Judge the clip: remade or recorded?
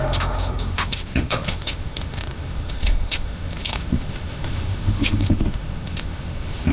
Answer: remade